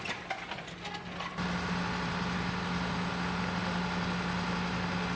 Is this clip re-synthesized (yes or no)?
no